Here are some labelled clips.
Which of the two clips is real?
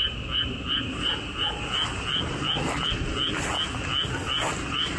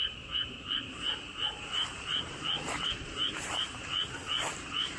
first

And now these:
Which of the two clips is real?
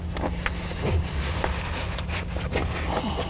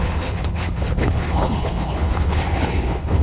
first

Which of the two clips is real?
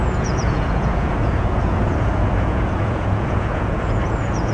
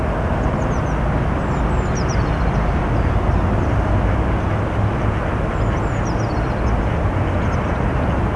second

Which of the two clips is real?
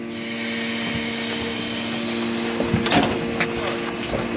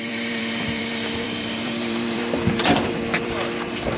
first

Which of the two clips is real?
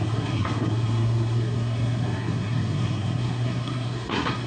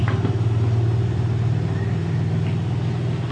second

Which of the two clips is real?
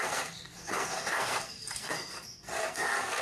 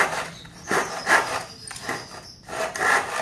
second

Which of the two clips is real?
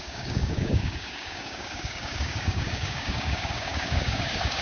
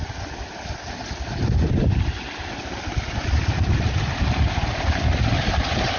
second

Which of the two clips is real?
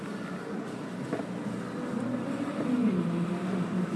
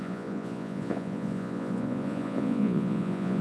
first